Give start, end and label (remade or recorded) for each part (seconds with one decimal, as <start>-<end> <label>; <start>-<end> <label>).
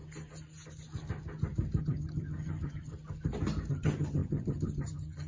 0.0-1.8 recorded; 1.8-2.9 remade; 2.9-3.7 recorded; 3.7-5.3 remade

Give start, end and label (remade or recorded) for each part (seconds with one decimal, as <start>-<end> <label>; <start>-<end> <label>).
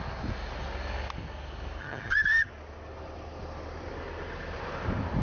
0.0-1.8 recorded; 1.8-2.5 remade; 2.5-5.2 recorded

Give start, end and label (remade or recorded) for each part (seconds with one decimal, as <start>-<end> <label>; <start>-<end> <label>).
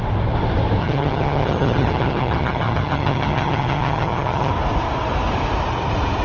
0.0-0.8 recorded; 0.8-4.5 remade; 4.5-6.2 recorded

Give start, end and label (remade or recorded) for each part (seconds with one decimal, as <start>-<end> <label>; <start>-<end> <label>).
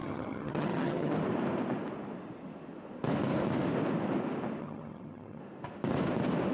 0.0-1.1 remade; 1.1-4.6 recorded; 4.6-5.4 remade; 5.4-6.5 recorded